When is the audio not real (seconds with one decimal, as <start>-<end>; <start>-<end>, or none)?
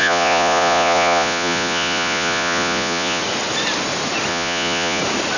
0.0-3.2; 4.3-5.0